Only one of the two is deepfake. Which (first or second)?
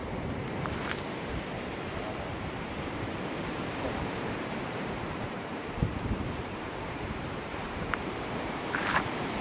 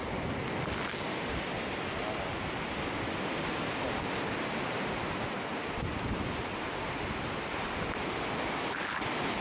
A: first